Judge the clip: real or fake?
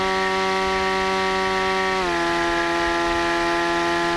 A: real